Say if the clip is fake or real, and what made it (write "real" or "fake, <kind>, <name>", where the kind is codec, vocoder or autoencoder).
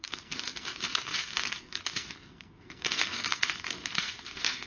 fake, codec, SNAC